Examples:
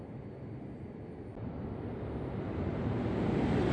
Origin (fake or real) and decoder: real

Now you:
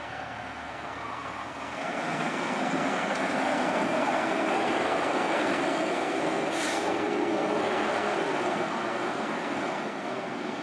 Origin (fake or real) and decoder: fake, codec, SNAC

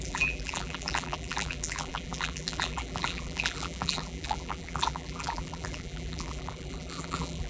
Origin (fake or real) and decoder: fake, vocoder, BigVGAN v2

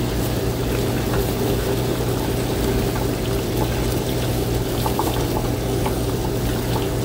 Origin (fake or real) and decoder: real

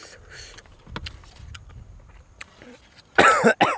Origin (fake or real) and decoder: real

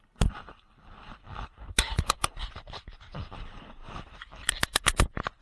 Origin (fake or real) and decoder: fake, vocoder, BigVGAN v2